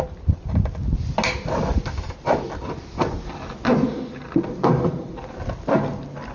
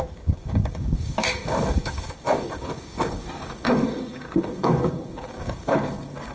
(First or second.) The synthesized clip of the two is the second